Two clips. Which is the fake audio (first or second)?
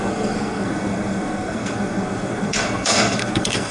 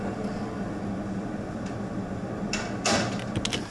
first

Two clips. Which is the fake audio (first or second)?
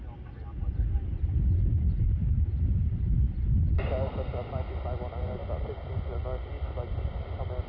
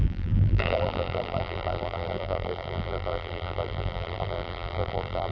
second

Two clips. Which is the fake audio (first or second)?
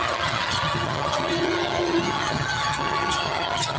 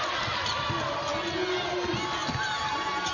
first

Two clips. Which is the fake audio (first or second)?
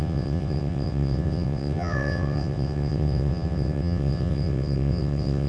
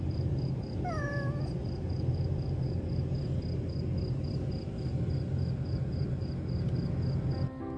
first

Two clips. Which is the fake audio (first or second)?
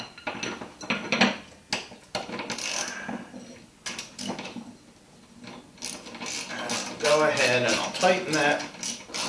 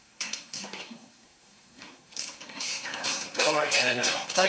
second